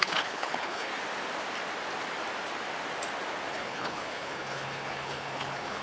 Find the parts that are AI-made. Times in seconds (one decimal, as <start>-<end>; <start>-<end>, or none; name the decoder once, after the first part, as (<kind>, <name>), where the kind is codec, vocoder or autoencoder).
0.0-0.9 (codec, HILCodec); 3.5-5.8